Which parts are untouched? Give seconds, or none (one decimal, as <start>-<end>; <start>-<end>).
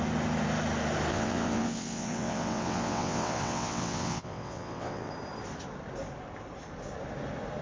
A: 0.0-1.1; 5.1-7.6